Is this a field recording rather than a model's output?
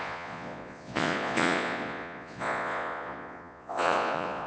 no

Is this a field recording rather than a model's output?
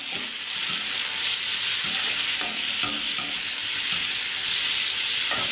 yes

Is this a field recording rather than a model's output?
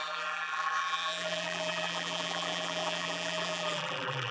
no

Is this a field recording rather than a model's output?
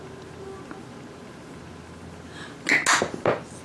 yes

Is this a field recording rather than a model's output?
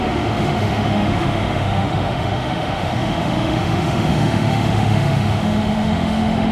no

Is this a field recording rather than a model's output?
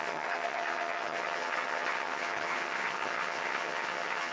no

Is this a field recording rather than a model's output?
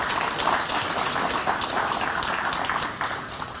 yes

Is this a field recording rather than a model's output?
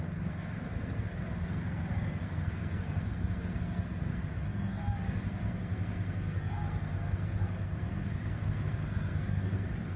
no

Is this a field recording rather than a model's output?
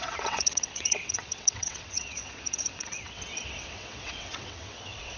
no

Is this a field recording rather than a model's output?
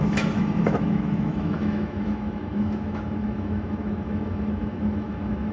no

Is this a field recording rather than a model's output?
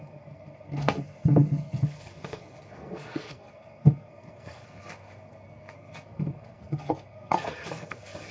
no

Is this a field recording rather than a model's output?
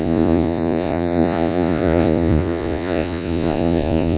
no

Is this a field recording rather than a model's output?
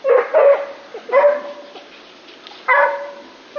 yes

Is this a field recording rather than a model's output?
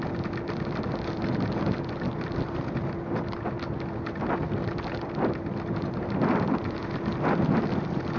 yes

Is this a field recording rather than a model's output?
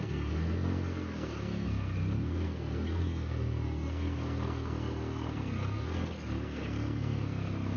no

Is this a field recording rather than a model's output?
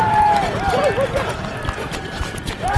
yes